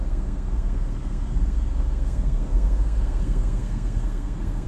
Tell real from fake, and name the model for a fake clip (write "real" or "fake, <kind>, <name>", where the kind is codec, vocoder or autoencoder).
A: fake, codec, SNAC